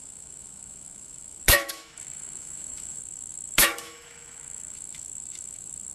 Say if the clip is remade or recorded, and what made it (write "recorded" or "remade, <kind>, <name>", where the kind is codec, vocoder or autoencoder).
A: remade, autoencoder, DAC-VAE